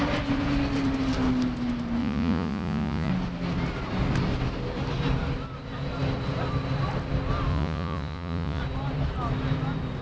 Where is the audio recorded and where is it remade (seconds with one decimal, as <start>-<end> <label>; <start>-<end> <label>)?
0.0-2.0 recorded; 2.0-3.1 remade; 3.1-7.5 recorded; 7.5-8.6 remade; 8.6-10.0 recorded